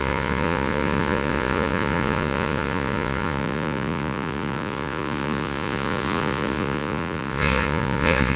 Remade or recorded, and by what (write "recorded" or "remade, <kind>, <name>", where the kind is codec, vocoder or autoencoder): remade, vocoder, Vocos